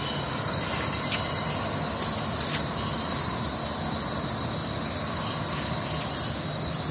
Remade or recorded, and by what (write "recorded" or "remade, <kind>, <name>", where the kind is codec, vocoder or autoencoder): recorded